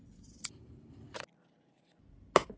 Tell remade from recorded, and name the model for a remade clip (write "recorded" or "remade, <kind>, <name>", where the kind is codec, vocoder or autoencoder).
recorded